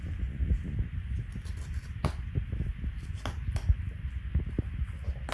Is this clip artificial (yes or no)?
no